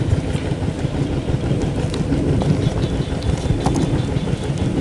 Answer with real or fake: fake